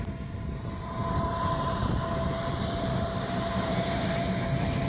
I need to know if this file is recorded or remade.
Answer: remade